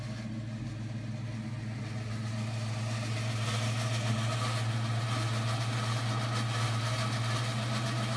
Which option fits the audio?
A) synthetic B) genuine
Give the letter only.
B